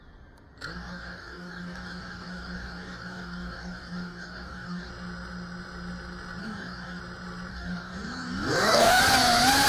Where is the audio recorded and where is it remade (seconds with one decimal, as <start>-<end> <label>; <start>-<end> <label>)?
0.0-0.7 recorded; 0.7-4.9 remade; 4.9-6.4 recorded; 6.4-7.0 remade; 7.0-7.5 recorded; 7.5-9.0 remade; 9.0-9.7 recorded